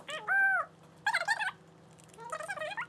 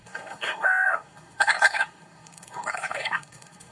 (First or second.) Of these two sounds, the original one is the first